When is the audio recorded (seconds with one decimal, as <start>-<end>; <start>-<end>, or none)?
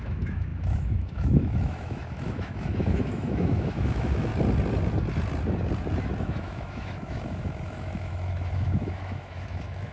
4.3-6.2